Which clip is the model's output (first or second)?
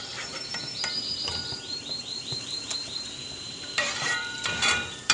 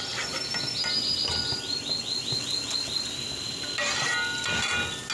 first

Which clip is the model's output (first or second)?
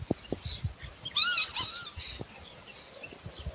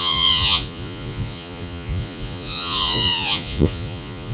second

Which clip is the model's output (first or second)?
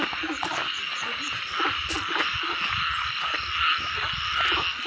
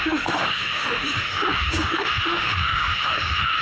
second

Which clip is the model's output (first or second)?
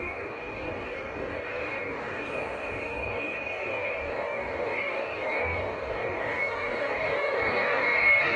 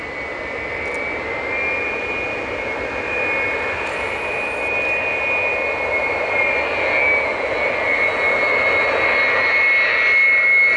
first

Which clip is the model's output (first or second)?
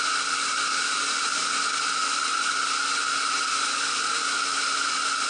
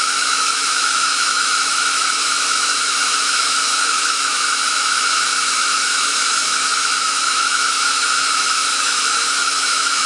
second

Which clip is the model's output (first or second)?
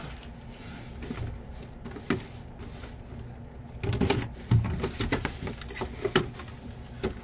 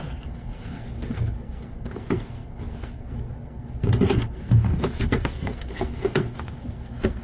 second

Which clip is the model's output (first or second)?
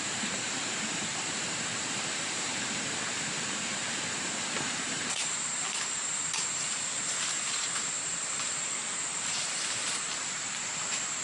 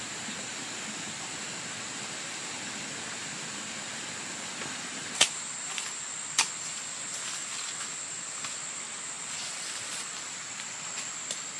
first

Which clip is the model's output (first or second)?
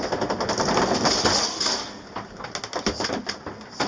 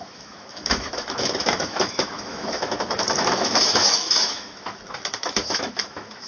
second